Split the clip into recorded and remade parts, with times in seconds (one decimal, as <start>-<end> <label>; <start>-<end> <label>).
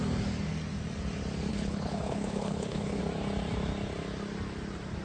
0.0-1.5 recorded; 1.5-3.0 remade; 3.0-5.0 recorded